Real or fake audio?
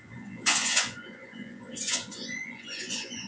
fake